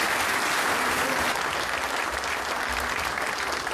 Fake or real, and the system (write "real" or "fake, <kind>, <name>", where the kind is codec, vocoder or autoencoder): real